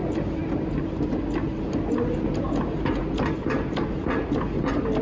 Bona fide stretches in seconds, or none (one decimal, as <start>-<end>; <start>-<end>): 0.0-5.0

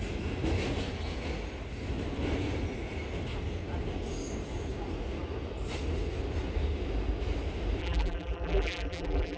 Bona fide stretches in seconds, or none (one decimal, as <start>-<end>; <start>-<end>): 0.0-7.8